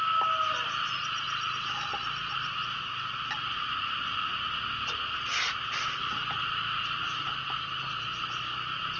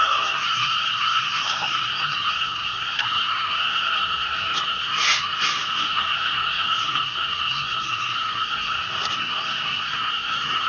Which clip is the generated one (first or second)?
second